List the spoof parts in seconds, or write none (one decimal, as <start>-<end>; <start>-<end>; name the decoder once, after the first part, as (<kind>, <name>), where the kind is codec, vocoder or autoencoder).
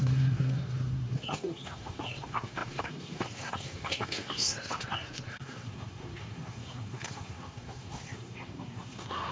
0.0-9.3 (codec, SNAC)